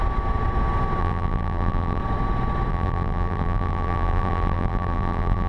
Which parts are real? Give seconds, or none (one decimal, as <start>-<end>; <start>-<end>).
0.0-1.0; 2.0-2.7